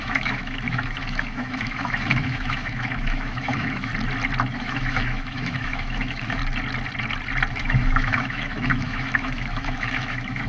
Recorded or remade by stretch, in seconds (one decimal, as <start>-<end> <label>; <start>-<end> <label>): 0.0-3.9 remade; 3.9-4.5 recorded; 4.5-6.4 remade; 6.4-7.5 recorded; 7.5-10.5 remade